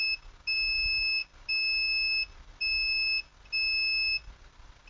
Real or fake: real